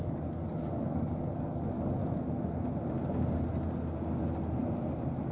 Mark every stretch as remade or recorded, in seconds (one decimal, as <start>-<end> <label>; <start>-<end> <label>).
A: 0.0-2.0 remade; 2.0-5.3 recorded